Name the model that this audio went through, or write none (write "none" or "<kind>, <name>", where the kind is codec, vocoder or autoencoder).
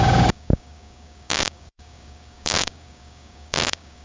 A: codec, DAC